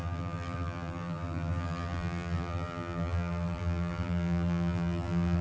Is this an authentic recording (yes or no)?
no